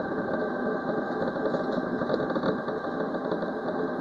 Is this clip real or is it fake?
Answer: real